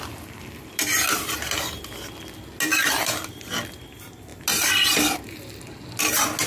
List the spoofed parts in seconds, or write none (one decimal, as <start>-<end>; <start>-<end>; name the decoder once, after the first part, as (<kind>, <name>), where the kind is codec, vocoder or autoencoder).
none